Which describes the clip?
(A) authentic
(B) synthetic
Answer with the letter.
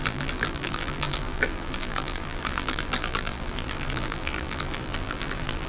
B